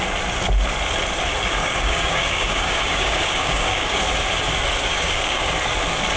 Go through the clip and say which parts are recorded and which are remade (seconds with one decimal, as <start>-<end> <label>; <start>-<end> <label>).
0.0-1.6 recorded; 1.6-4.0 remade; 4.0-4.9 recorded; 4.9-5.5 remade; 5.5-6.2 recorded